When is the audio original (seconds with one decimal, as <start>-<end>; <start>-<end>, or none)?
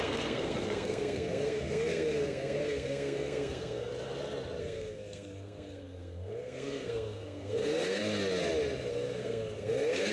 3.9-4.6; 8.0-8.9